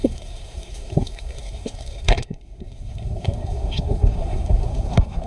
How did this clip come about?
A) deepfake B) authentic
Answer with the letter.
A